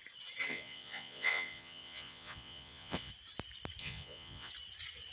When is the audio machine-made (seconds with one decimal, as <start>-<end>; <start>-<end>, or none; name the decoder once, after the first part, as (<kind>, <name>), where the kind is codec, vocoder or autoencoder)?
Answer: 0.5-3.1 (vocoder, Vocos); 3.8-4.5